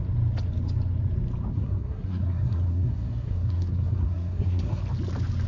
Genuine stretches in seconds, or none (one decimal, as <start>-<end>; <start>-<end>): 0.0-1.5; 4.8-5.5